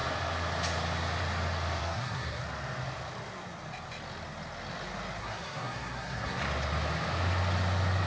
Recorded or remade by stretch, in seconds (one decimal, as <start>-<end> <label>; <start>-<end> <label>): 0.0-1.8 recorded; 1.8-2.4 remade; 2.4-5.2 recorded; 5.2-6.4 remade; 6.4-8.1 recorded